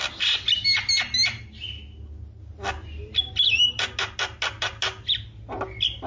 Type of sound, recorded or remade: recorded